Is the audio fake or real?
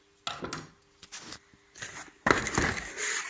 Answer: real